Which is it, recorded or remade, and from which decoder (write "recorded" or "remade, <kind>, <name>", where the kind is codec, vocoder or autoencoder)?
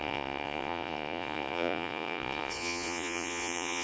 remade, vocoder, Vocos